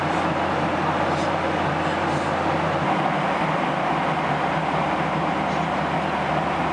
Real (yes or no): yes